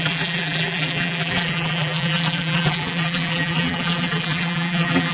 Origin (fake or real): fake